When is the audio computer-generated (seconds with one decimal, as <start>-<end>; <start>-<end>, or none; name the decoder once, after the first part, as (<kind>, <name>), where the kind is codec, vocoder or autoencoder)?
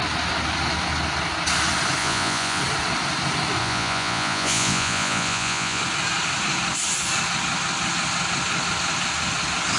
2.0-2.6 (vocoder, Vocos); 3.6-5.8